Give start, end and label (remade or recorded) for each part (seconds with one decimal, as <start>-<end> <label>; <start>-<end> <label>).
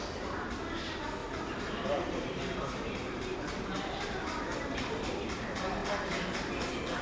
0.0-1.2 recorded; 1.2-4.4 remade; 4.4-7.0 recorded